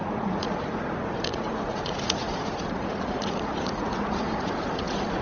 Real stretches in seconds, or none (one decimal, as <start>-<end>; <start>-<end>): none